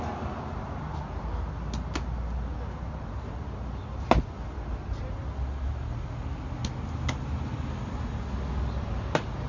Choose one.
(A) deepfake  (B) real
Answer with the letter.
B